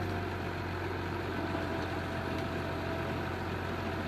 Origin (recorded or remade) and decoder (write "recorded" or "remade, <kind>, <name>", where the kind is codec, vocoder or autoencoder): recorded